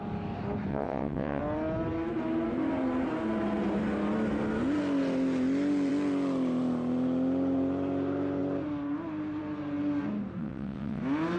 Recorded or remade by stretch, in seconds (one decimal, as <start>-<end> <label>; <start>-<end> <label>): 0.0-0.7 recorded; 0.7-1.4 remade; 1.4-10.4 recorded; 10.4-11.0 remade; 11.0-11.4 recorded